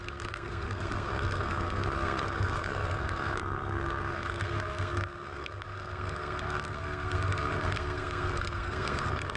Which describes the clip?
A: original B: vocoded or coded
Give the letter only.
B